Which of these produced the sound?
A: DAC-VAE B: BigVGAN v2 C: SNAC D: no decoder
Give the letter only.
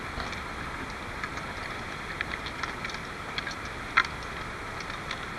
D